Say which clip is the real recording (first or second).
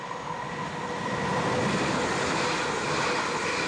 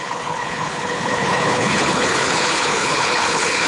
first